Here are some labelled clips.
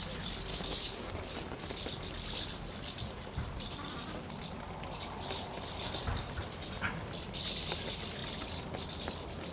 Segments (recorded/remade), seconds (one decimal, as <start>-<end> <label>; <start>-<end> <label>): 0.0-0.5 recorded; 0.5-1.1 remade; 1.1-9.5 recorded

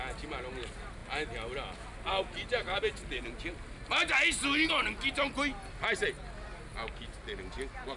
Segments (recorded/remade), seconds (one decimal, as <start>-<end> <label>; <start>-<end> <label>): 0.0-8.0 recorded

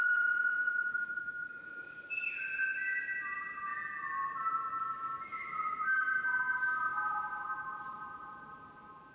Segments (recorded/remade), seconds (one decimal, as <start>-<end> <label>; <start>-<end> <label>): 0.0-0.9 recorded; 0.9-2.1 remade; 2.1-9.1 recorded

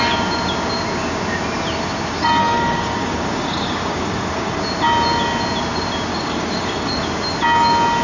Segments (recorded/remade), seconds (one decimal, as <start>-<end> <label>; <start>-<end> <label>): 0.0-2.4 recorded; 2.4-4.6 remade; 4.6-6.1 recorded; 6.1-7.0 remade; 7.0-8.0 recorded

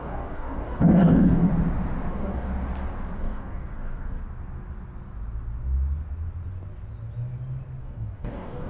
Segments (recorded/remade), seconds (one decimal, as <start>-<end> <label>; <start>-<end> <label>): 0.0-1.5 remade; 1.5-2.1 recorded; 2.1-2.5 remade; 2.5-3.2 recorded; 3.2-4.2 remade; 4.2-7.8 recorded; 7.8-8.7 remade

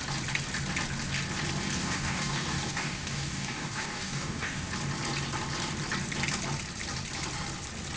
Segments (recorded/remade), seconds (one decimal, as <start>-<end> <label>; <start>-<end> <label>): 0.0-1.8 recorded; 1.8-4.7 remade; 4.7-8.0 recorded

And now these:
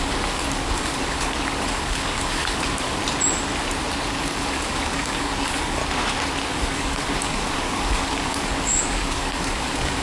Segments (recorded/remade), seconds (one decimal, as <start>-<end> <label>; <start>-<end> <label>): 0.0-3.0 remade; 3.0-4.2 recorded; 4.2-5.8 remade; 5.8-6.5 recorded; 6.5-10.0 remade

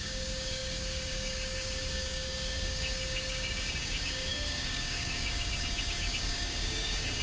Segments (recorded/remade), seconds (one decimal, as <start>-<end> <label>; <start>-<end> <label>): 0.0-7.2 remade